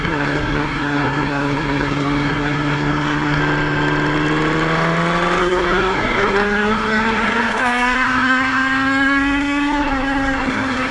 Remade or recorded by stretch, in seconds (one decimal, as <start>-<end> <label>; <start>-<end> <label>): 0.0-3.4 remade; 3.4-5.4 recorded; 5.4-10.9 remade